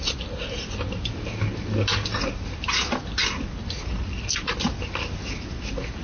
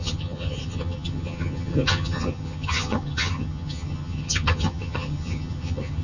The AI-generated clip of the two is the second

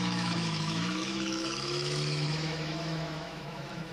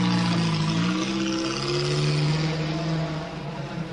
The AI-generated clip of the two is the first